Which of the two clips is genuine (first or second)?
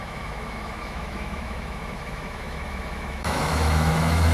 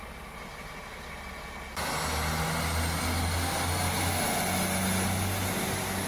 second